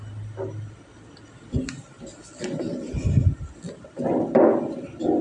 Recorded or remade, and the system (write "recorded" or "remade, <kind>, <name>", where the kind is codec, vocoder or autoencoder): recorded